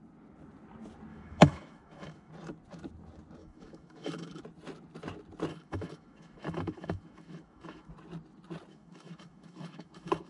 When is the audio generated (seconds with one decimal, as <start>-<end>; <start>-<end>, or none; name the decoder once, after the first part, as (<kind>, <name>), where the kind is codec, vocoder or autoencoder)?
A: 1.1-2.3 (autoencoder, DAC-VAE); 3.4-4.4; 5.5-7.9; 8.7-10.3